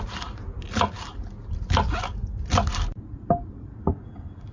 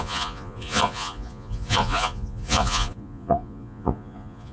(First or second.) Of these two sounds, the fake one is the second